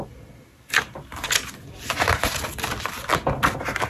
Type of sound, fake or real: real